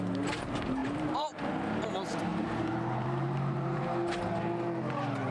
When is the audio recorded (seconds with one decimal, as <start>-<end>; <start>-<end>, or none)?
0.0-0.8; 1.4-2.3; 3.8-5.3